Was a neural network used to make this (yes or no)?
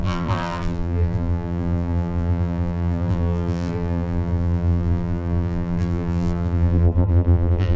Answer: yes